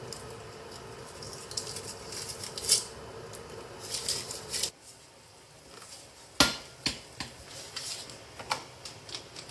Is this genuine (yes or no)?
yes